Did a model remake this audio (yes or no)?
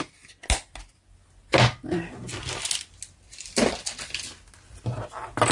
no